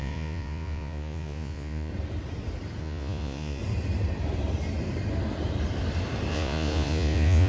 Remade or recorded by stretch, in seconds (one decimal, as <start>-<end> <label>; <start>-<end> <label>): 0.0-1.9 remade; 1.9-2.8 recorded; 2.8-3.6 remade; 3.6-6.3 recorded; 6.3-7.5 remade